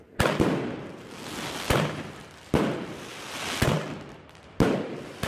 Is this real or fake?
real